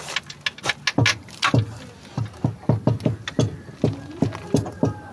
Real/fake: real